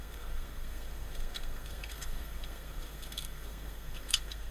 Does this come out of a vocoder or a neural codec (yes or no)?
yes